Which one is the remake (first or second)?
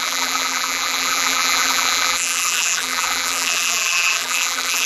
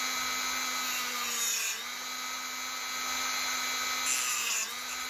first